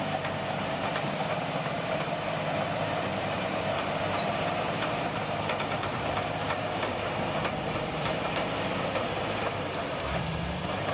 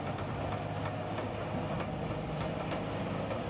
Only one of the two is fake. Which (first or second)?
first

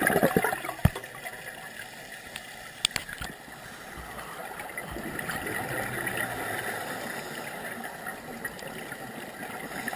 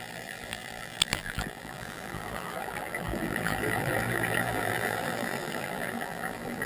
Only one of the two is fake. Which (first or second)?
second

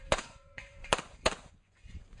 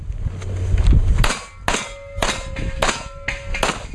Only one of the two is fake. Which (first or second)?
first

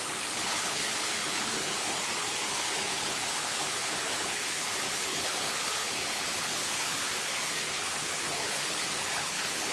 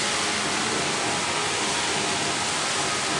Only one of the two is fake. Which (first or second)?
first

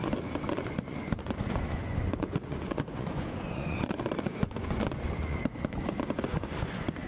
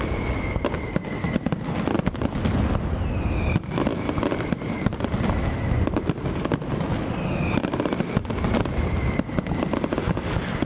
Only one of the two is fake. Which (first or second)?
first